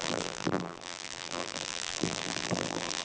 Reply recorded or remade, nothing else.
remade